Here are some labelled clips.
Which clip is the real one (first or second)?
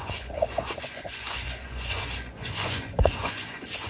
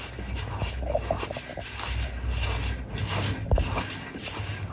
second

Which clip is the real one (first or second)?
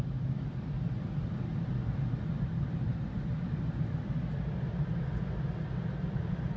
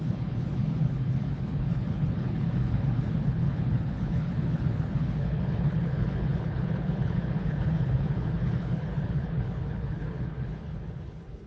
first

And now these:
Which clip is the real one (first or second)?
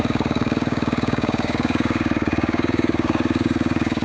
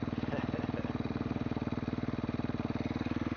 second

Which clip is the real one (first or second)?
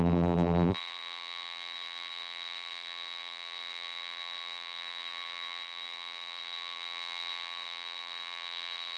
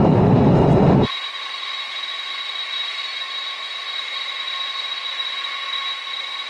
second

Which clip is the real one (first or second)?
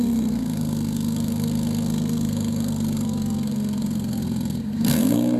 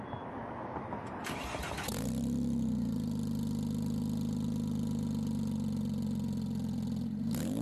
second